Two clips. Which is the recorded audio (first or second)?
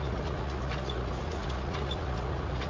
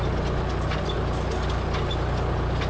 second